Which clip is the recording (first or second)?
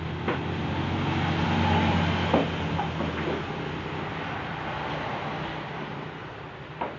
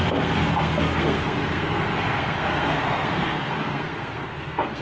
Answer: first